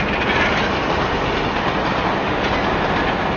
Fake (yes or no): no